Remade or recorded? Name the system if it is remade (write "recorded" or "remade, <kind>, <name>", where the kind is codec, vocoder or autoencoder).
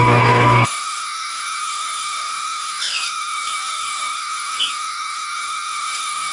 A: remade, codec, DAC